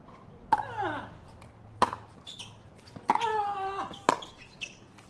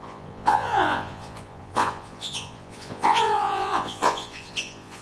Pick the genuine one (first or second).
first